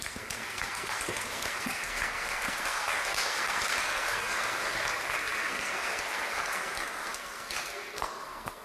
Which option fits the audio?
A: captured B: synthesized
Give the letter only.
B